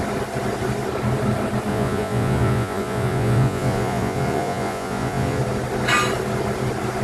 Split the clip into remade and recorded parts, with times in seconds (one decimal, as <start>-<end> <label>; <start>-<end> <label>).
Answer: 0.0-1.7 recorded; 1.7-5.4 remade; 5.4-7.0 recorded